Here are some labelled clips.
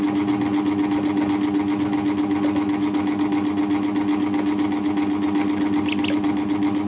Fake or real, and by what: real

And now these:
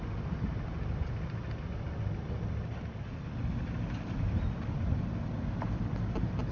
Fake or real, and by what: real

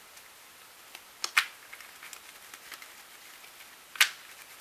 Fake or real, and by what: real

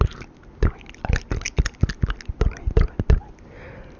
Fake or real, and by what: real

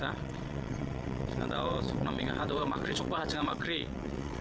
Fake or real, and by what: fake, vocoder, WaveNeXt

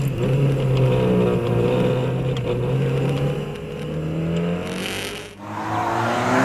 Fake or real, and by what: real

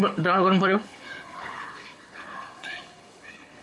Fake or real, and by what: fake, codec, HILCodec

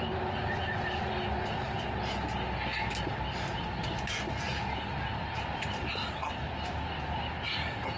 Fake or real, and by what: real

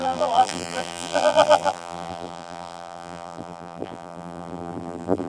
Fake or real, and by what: fake, vocoder, BigVGAN v2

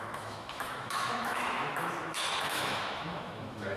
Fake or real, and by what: fake, autoencoder, DAC-VAE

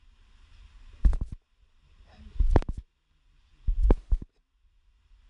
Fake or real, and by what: real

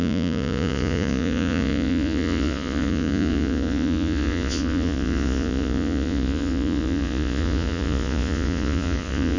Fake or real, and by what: fake, vocoder, Vocos